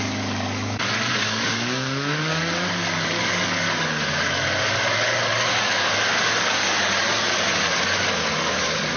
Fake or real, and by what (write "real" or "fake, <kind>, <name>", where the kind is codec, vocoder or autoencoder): fake, codec, DAC